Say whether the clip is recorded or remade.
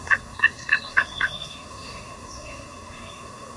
remade